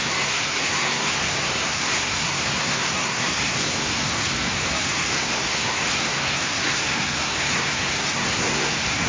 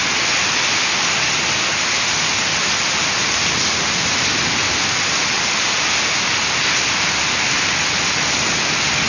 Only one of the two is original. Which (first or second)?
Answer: second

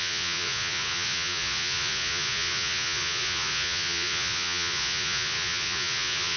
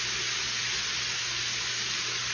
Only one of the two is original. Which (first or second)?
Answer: second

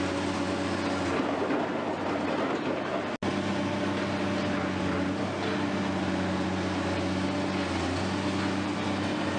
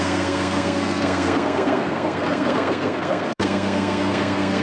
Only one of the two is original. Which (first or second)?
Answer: first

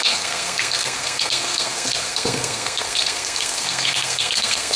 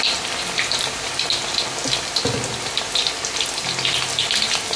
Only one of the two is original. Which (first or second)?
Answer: second